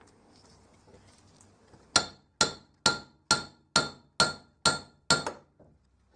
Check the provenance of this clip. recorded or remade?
recorded